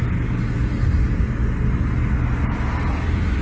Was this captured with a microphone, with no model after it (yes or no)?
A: yes